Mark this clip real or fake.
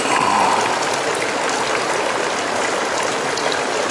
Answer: real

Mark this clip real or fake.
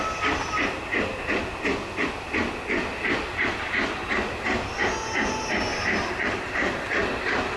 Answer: real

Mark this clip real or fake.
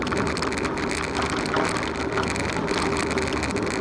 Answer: real